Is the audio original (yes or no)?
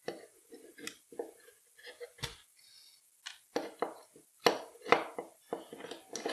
yes